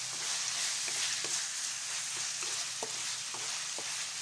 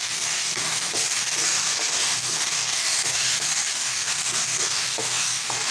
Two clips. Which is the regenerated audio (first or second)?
second